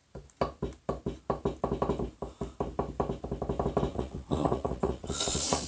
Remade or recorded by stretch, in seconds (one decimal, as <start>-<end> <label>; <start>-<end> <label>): 0.0-3.9 recorded; 3.9-5.7 remade